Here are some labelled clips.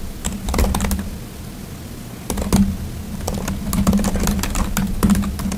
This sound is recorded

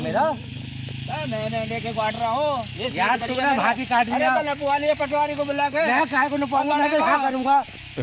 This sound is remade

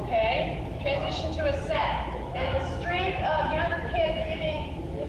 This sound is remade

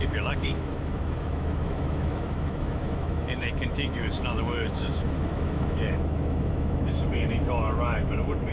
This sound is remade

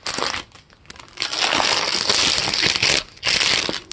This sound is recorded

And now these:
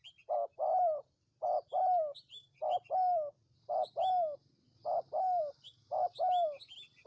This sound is recorded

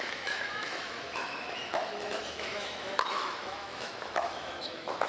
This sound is remade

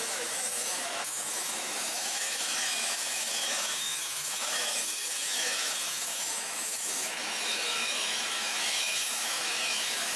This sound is remade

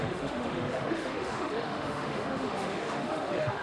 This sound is remade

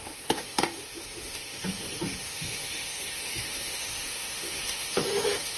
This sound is remade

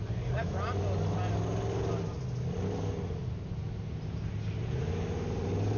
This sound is recorded